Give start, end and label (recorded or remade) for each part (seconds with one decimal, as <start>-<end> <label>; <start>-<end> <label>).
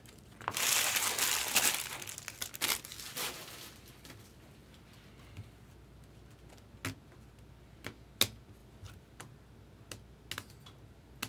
0.0-11.3 recorded